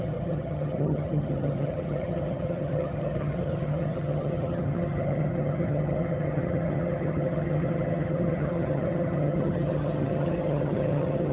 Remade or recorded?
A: remade